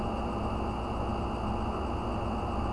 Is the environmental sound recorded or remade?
recorded